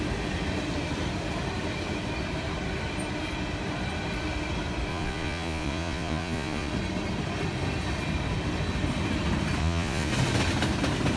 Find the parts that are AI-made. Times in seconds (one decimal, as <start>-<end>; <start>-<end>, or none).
4.9-6.7; 9.6-10.1